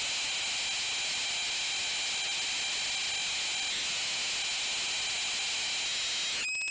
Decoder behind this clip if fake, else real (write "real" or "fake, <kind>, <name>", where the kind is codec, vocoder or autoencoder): real